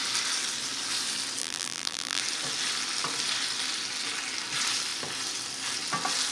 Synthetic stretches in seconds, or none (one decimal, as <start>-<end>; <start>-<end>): 1.4-2.2